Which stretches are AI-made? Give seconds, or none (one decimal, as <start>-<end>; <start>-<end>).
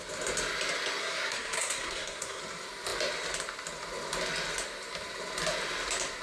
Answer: 1.0-2.4